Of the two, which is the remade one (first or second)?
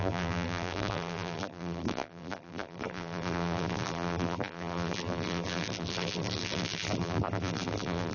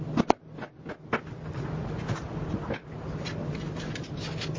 first